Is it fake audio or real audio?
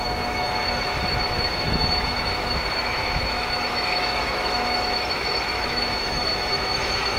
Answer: fake